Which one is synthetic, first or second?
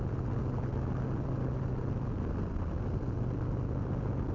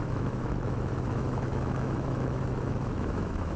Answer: second